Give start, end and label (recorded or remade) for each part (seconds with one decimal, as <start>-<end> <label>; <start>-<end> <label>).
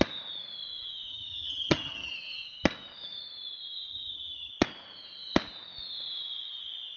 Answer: 0.0-1.1 recorded; 1.1-2.1 remade; 2.1-3.9 recorded; 3.9-4.5 remade; 4.5-7.0 recorded